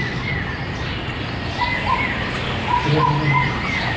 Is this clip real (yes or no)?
yes